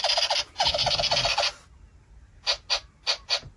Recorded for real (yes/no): yes